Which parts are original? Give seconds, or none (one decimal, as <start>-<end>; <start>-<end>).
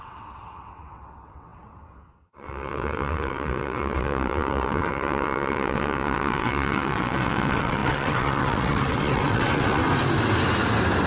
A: 9.8-11.1